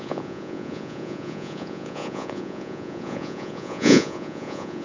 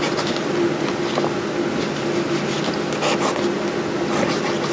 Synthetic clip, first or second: first